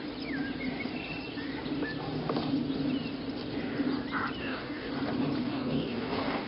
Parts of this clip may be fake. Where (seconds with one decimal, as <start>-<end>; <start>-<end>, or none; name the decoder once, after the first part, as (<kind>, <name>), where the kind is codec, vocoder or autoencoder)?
4.4-4.9 (codec, DAC); 5.4-6.5